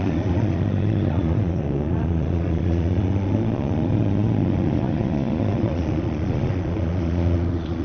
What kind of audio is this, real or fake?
fake